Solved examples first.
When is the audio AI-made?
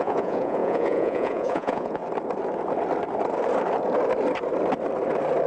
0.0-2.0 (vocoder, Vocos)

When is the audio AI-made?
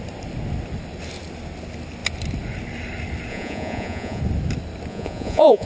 3.3-4.2 (vocoder, Vocos); 4.9-5.7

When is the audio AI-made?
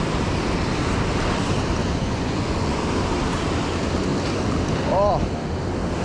1.8-2.8 (vocoder, Vocos)